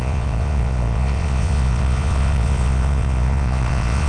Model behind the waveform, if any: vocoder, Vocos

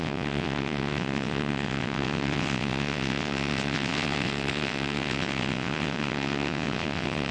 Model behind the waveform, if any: vocoder, WaveNeXt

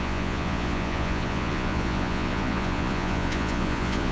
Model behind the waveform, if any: vocoder, Vocos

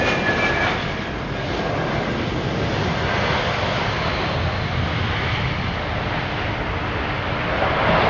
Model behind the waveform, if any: none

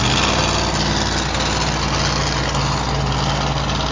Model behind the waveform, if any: none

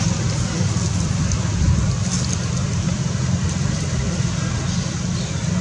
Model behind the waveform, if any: none